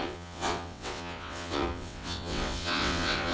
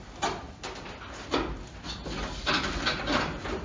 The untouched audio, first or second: second